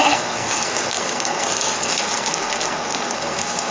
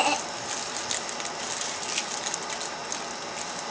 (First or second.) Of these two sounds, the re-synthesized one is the first